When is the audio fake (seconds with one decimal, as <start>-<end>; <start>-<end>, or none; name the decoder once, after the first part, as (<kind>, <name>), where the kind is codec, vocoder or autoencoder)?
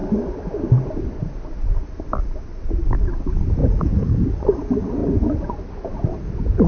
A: 3.6-4.3 (vocoder, Vocos)